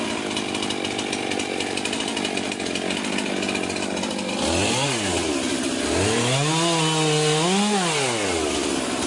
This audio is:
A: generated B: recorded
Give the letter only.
B